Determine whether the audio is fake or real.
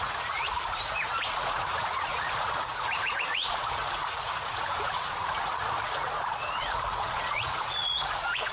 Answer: fake